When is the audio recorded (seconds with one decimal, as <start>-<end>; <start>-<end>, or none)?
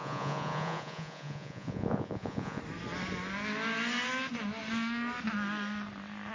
2.6-6.3